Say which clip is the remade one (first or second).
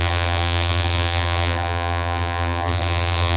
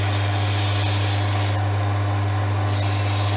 first